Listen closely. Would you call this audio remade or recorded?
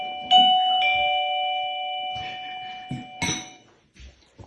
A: recorded